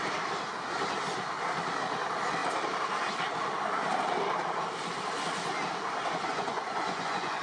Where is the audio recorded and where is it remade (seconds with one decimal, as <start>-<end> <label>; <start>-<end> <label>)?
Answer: 0.0-6.3 recorded; 6.3-7.4 remade